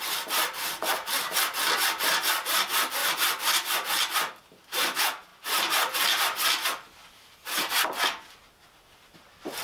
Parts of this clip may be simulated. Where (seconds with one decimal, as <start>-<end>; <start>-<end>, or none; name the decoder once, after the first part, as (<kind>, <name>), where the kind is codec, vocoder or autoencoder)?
none